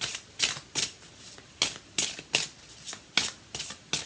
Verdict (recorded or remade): recorded